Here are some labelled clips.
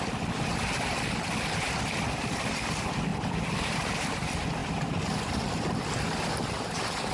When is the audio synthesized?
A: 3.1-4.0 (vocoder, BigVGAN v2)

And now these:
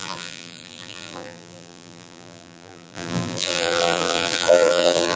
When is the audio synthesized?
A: 0.0-5.2 (vocoder, BigVGAN v2)

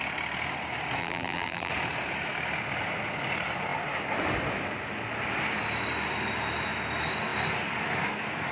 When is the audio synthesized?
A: 1.0-1.7 (vocoder, BigVGAN v2)

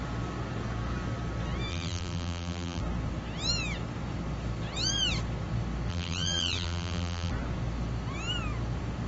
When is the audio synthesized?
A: 1.7-2.8 (vocoder, BigVGAN v2); 5.9-7.3